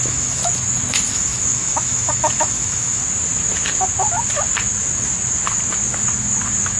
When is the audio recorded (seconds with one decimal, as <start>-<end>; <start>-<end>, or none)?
0.4-1.1; 3.0-6.8